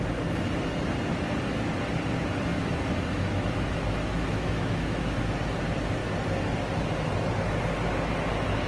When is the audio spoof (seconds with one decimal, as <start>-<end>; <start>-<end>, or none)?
2.5-5.2